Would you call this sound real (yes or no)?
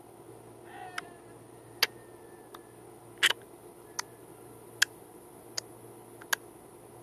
yes